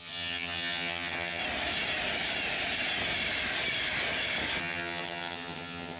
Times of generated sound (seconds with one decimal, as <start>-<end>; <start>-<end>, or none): 0.0-1.4; 4.6-6.0